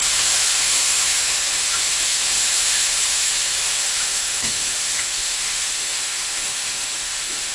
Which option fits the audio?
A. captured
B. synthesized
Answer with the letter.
B